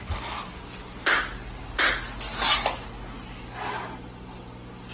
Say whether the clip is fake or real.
real